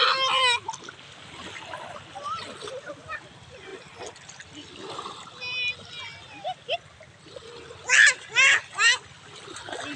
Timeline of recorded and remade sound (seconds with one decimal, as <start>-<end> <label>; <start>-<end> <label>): 0.0-10.0 recorded